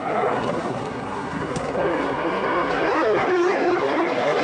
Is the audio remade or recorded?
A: remade